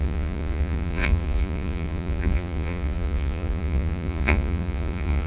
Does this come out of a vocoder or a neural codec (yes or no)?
yes